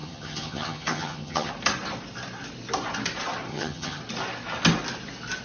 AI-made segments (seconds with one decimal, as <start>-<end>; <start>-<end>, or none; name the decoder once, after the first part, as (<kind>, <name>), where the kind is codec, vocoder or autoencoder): 0.0-1.5 (vocoder, HiFi-GAN); 3.5-4.0